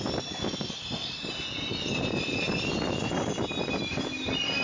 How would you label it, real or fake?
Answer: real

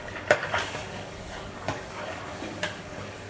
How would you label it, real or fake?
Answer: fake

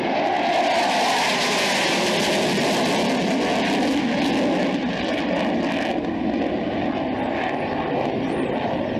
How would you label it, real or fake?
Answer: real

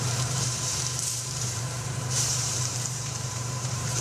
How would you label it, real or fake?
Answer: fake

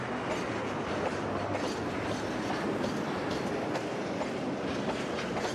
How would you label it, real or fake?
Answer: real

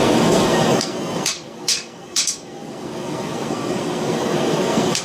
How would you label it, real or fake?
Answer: fake